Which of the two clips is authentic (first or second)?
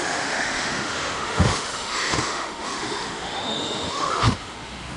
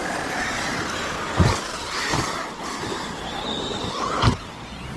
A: second